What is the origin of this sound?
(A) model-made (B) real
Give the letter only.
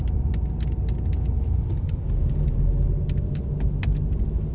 B